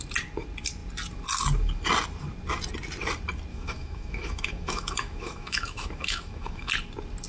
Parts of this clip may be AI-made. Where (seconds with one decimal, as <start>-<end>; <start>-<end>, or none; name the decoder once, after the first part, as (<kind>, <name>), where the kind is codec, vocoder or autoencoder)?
3.5-6.7 (autoencoder, DAC-VAE)